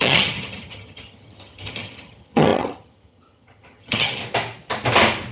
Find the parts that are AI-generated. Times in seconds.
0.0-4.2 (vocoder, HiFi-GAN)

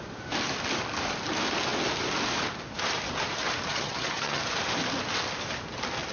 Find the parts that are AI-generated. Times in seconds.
3.7-4.4 (vocoder, HiFi-GAN)

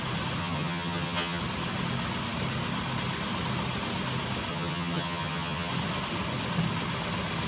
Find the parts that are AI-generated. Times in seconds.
0.4-1.4 (vocoder, HiFi-GAN); 4.5-5.7

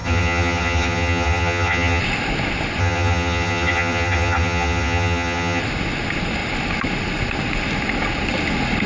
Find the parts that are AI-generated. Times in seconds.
0.0-2.0 (vocoder, HiFi-GAN); 2.8-5.6

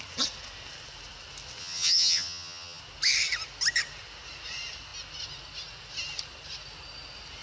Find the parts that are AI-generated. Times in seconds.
1.6-2.8 (vocoder, HiFi-GAN)

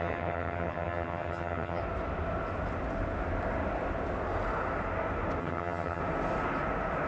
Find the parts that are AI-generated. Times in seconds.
0.0-1.8 (vocoder, HiFi-GAN); 5.4-6.0

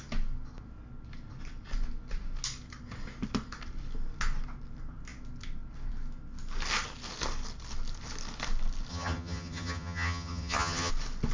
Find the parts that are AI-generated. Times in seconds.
8.9-10.9 (vocoder, HiFi-GAN)

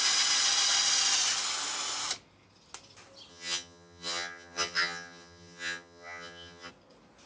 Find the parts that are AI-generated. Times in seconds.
3.3-6.7 (vocoder, HiFi-GAN)